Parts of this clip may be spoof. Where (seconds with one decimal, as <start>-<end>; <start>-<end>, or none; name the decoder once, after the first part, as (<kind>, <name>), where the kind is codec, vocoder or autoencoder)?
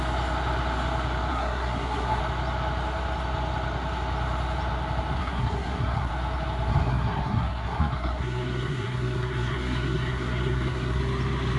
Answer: 1.3-2.2 (codec, SNAC); 5.2-6.1; 6.7-11.0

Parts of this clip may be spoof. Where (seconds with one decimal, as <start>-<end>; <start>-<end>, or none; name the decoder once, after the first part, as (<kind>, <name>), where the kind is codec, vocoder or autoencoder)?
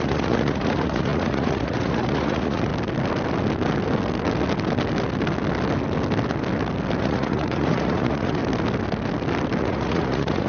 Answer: 0.0-2.7 (vocoder, Vocos); 7.0-8.4; 9.6-10.5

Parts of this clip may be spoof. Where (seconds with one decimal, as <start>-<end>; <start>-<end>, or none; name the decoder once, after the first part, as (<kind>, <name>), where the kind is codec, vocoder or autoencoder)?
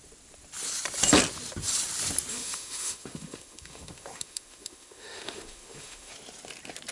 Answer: 2.3-6.1 (autoencoder, DAC-VAE)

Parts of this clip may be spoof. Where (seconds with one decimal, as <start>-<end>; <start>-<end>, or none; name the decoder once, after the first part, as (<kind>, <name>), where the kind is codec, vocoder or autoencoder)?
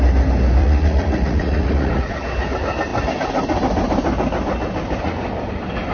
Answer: 0.6-2.1 (vocoder, Vocos)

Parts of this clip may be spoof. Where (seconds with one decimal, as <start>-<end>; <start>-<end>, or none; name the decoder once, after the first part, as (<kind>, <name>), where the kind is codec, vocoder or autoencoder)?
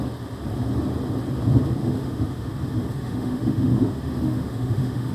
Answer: 1.8-2.5 (autoencoder, DAC-VAE); 2.9-5.1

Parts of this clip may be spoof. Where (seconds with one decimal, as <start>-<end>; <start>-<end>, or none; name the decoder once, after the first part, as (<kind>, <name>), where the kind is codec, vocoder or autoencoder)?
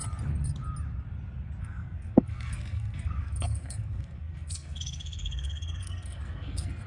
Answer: 1.6-6.9 (codec, SNAC)